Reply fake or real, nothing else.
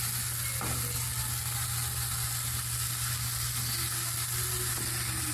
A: real